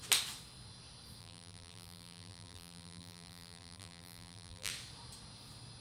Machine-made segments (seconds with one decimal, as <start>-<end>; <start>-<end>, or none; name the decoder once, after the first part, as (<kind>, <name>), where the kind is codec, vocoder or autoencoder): 1.2-4.7 (vocoder, BigVGAN v2)